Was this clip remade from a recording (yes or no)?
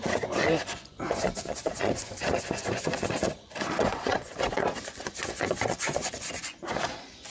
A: yes